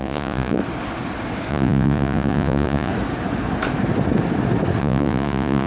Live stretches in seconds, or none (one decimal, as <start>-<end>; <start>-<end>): 0.6-1.5; 2.9-4.8